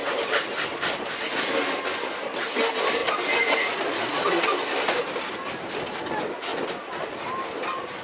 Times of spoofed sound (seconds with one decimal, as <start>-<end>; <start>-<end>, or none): none